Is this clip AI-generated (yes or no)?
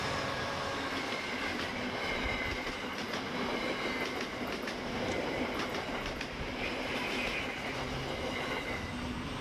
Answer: no